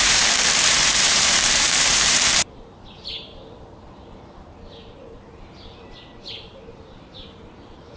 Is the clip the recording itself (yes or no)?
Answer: no